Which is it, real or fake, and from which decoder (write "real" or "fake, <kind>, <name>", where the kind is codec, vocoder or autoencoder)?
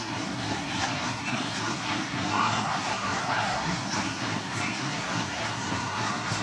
fake, codec, SNAC